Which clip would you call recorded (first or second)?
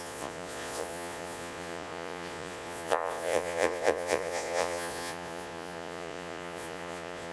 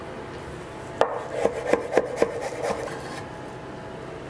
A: second